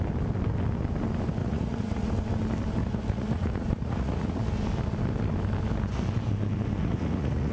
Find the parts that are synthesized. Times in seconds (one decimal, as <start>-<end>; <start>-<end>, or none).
1.4-2.1; 2.8-4.4; 6.8-7.5